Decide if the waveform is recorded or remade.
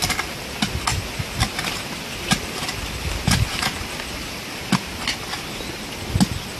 recorded